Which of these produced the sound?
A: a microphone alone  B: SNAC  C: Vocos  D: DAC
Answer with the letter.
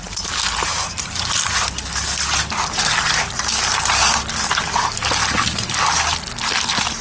A